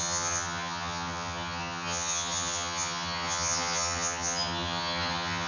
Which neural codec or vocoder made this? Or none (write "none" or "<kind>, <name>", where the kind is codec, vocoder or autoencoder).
vocoder, HiFi-GAN